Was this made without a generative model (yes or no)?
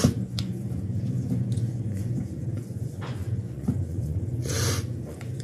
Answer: no